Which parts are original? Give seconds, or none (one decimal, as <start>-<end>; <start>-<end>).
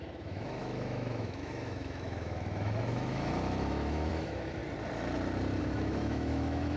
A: 4.6-5.6